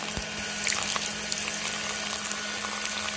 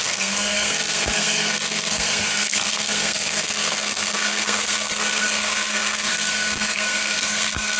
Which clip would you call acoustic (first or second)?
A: first